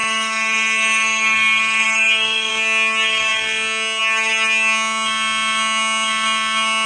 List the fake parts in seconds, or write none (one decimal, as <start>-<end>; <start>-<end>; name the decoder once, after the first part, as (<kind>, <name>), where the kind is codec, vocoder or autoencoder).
0.0-2.5 (codec, SNAC)